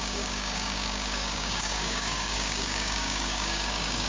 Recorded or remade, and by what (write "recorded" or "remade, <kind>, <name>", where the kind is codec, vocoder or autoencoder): remade, codec, DAC